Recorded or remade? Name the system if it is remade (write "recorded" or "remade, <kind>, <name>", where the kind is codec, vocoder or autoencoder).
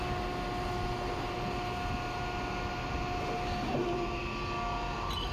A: recorded